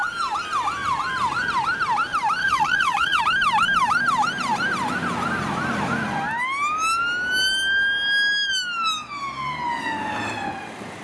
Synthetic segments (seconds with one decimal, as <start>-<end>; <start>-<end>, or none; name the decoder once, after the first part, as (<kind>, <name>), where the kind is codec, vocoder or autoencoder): 2.4-3.2 (vocoder, Vocos)